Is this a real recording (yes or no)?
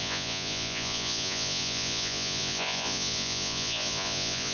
no